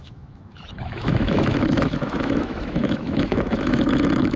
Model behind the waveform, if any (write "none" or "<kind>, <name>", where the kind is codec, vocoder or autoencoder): autoencoder, DAC-VAE